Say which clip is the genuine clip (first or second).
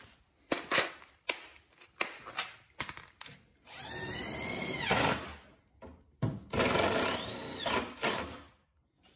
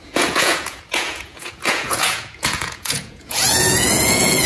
first